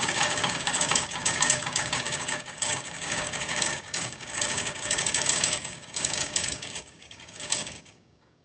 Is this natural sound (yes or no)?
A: no